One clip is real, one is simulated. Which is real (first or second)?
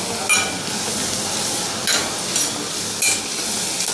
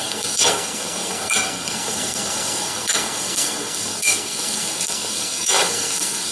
first